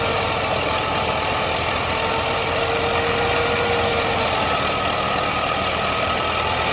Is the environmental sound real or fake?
real